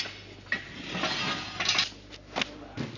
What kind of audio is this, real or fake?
real